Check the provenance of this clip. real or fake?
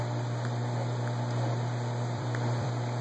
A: fake